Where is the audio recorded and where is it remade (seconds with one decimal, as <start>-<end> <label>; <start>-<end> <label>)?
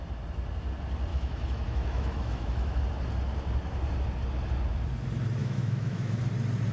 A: 0.0-1.1 recorded; 1.1-2.8 remade; 2.8-5.4 recorded; 5.4-6.2 remade; 6.2-6.7 recorded